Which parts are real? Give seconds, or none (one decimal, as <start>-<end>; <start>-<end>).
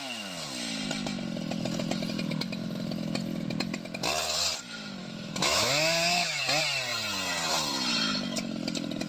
0.0-5.0; 6.4-9.1